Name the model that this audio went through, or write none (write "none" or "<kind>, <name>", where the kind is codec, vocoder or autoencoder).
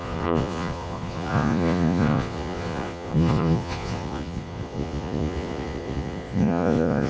vocoder, Vocos